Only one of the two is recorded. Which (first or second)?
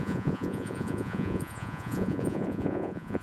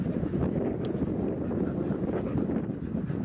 second